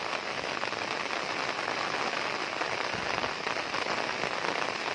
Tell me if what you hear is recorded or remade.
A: recorded